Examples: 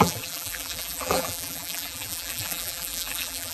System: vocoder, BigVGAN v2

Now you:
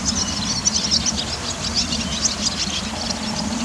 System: none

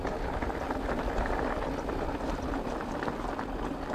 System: none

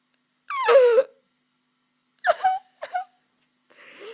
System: none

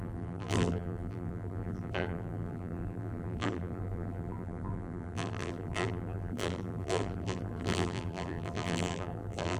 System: vocoder, BigVGAN v2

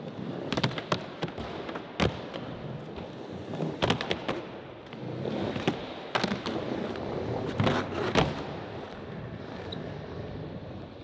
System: none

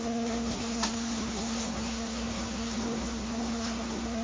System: codec, SNAC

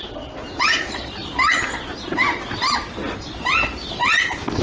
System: none